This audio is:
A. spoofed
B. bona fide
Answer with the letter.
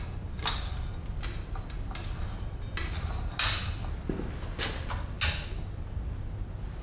B